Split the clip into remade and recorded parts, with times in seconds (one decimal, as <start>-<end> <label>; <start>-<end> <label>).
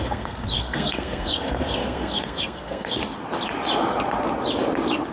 0.0-3.0 remade; 3.0-5.1 recorded